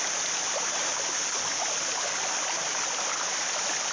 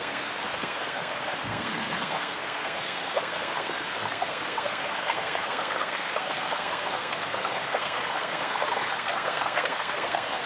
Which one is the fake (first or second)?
second